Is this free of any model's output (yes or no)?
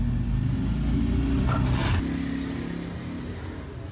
yes